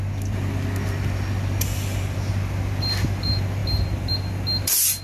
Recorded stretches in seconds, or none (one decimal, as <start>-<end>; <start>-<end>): 0.0-5.0